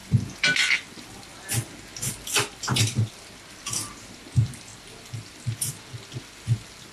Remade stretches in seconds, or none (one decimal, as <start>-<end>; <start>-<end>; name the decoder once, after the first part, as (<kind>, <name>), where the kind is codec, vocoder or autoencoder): 4.7-5.7 (vocoder, BigVGAN v2)